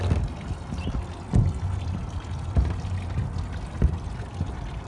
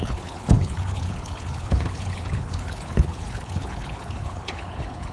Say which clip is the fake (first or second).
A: second